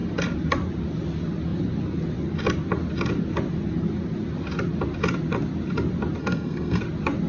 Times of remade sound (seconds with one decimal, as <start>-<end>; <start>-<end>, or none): 6.2-6.8